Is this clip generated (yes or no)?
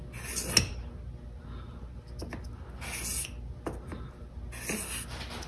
no